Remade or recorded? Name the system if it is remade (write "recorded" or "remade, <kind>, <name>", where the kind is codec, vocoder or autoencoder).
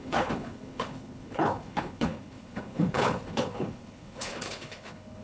remade, codec, HILCodec